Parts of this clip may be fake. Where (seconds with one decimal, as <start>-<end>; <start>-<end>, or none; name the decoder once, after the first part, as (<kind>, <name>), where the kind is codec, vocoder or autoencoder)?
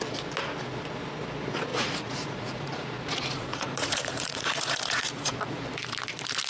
1.7-5.6 (vocoder, Vocos)